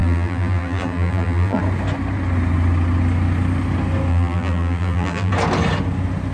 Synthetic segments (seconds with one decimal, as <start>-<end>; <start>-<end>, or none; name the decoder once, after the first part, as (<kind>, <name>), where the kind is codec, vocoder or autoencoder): 0.0-1.6 (vocoder, BigVGAN v2); 4.1-5.3